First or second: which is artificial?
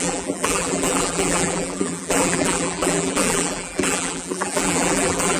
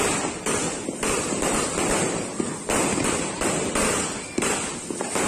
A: first